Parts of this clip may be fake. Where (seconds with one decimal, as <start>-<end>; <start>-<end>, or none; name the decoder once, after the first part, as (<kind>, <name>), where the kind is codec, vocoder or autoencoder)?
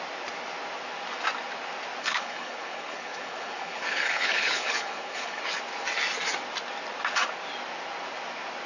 2.0-5.4 (codec, HILCodec)